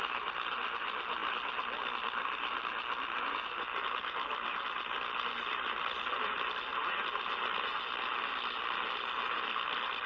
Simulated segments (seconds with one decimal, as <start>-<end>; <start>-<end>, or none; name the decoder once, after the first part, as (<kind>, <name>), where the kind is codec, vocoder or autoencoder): none